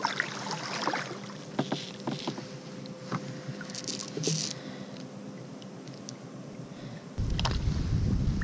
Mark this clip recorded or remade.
recorded